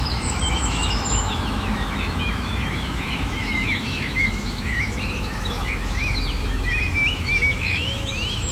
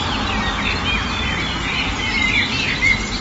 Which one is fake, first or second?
first